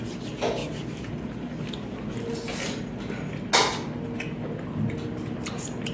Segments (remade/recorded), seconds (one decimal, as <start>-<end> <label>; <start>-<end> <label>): 0.0-0.6 recorded; 0.6-1.1 remade; 1.1-5.9 recorded